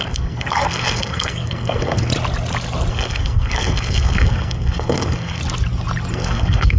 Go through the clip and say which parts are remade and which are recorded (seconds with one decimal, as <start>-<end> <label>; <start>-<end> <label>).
0.0-2.1 remade; 2.1-2.9 recorded; 2.9-5.4 remade; 5.4-6.1 recorded; 6.1-6.8 remade